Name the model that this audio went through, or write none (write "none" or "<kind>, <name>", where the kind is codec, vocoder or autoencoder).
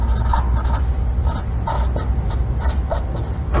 none